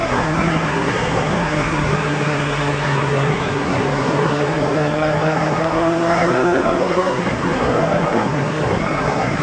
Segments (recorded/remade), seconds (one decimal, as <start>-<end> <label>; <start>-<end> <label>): 0.0-9.4 remade